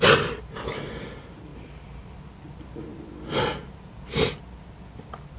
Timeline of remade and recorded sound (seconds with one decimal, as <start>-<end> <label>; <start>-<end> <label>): 0.0-5.4 recorded